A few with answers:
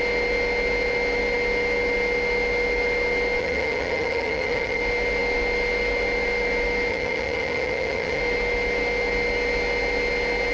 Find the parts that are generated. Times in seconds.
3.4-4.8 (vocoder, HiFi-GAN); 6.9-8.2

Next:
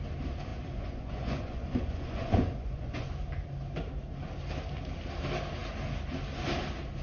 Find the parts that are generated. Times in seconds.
0.5-3.1 (vocoder, Vocos)